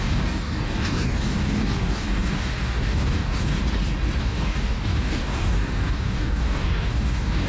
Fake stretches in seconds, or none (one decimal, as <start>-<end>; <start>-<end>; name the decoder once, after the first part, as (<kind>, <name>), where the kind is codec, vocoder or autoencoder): 0.0-3.6 (codec, DAC); 4.2-7.5

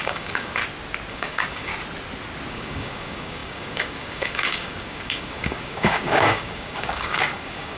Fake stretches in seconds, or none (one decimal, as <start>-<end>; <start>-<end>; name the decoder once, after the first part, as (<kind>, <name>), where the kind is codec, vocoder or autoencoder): 0.0-0.6 (codec, DAC); 1.1-1.7; 2.5-7.8